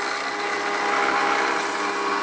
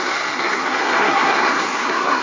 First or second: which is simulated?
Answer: second